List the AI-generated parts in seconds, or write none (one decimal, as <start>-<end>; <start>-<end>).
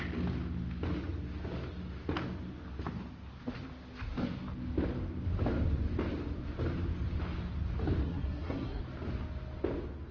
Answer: 8.0-8.8